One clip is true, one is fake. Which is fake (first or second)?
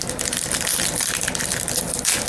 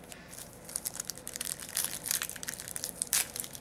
second